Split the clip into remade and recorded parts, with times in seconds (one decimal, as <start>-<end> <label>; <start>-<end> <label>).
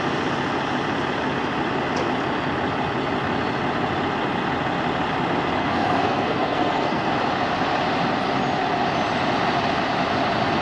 0.0-5.6 recorded; 5.6-7.1 remade; 7.1-10.6 recorded